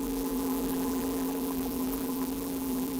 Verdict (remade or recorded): remade